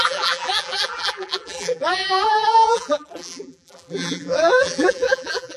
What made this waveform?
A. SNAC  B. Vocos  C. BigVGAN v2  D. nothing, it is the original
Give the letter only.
C